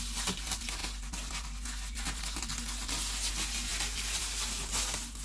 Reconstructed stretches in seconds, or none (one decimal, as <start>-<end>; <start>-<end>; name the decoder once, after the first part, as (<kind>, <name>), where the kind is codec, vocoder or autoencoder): none